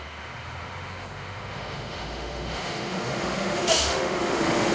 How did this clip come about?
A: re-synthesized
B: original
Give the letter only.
A